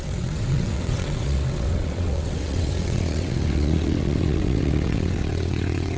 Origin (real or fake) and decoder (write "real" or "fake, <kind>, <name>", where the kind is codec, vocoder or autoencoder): fake, vocoder, WaveNeXt